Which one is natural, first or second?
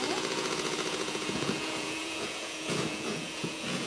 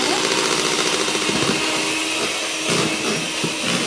second